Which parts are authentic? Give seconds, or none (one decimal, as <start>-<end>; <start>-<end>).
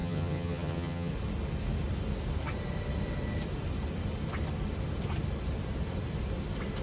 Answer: 1.1-6.8